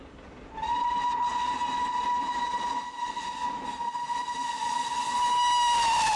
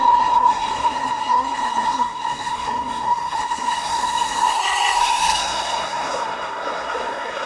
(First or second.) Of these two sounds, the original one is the first